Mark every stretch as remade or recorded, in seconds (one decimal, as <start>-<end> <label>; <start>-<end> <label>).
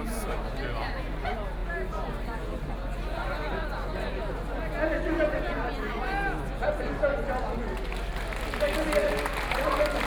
0.0-1.6 recorded; 1.6-2.7 remade; 2.7-10.1 recorded